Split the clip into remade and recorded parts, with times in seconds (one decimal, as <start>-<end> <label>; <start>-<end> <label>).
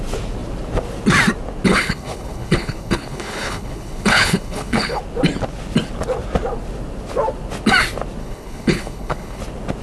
0.0-1.7 recorded; 1.7-5.0 remade; 5.0-8.2 recorded; 8.2-9.4 remade; 9.4-9.8 recorded